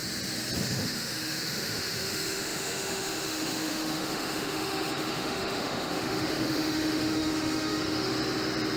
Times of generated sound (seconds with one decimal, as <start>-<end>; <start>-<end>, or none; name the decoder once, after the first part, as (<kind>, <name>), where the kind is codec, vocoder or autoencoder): 0.6-8.1 (autoencoder, DAC-VAE)